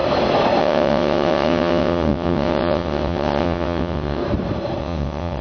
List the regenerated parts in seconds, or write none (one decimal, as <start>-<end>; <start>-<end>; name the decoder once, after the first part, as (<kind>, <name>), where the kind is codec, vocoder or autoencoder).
0.6-4.2 (vocoder, WaveNeXt); 4.8-5.4